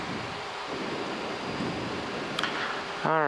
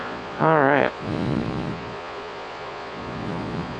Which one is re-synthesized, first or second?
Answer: second